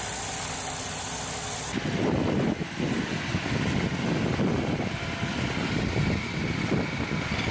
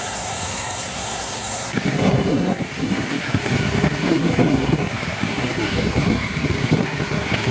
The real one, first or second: first